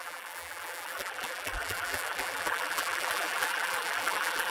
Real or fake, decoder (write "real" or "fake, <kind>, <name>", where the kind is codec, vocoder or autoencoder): fake, vocoder, BigVGAN v2